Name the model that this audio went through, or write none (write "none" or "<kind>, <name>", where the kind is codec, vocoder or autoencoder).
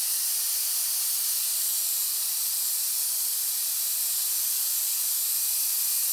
vocoder, BigVGAN v2